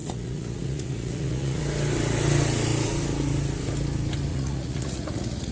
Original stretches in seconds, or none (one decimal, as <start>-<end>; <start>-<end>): 1.6-4.3